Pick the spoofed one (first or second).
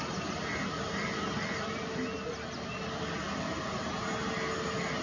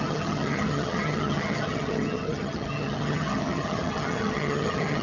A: second